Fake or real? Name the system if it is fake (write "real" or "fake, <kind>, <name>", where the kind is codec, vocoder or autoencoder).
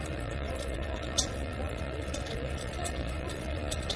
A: fake, vocoder, Vocos